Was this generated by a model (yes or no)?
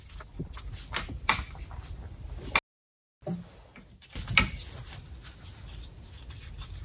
no